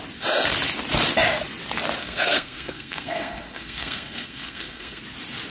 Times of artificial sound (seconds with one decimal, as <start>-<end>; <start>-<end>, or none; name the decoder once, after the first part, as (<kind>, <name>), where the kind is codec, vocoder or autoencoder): 2.0-5.0 (codec, SNAC)

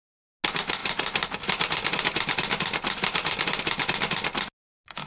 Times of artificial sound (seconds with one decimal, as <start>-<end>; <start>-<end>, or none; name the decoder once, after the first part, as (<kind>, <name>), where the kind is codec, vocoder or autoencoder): none

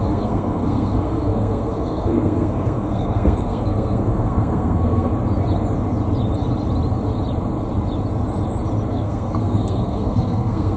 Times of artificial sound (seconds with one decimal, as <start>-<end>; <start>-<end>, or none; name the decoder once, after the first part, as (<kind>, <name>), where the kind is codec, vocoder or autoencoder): 0.0-5.1 (codec, SNAC); 8.9-10.8